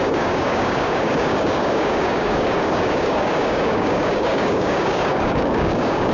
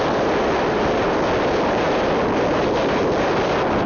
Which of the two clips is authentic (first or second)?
second